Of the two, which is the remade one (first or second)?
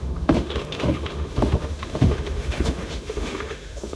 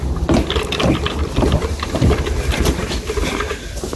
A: first